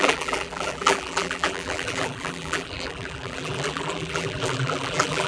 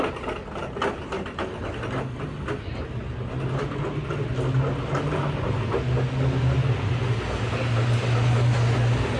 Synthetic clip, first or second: first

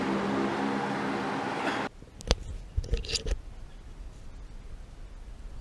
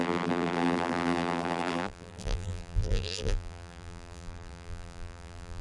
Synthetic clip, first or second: second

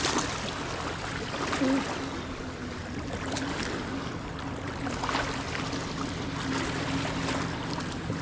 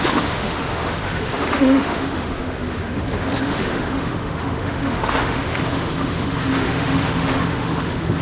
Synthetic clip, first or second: second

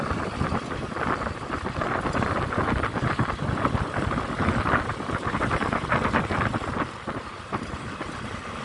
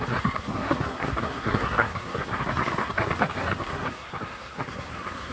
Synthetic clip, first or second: second